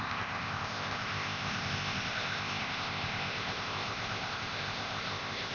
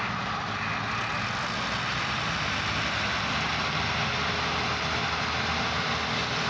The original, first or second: second